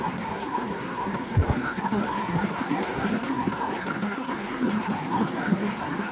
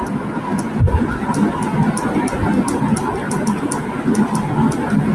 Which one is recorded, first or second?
second